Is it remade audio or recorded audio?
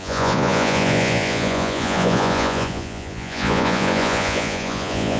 remade